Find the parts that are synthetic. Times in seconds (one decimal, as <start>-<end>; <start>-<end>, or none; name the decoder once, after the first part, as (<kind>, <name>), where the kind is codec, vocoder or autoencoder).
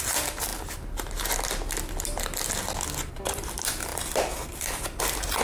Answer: 0.0-0.5 (vocoder, BigVGAN v2); 3.1-5.4